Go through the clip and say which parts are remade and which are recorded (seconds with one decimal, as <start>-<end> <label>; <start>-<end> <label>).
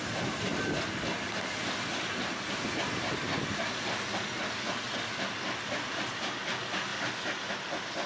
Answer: 0.0-8.1 recorded